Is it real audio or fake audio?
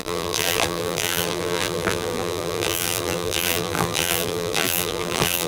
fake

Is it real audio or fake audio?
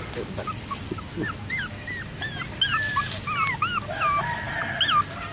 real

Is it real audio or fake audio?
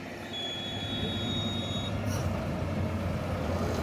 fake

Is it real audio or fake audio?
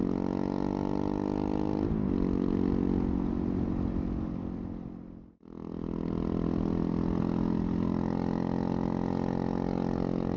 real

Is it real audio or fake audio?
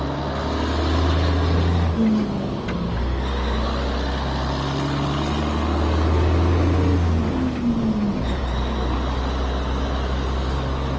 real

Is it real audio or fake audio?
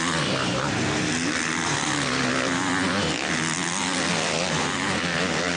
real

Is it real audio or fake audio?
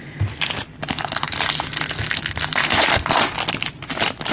real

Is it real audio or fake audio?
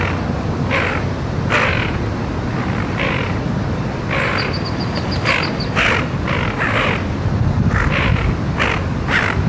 real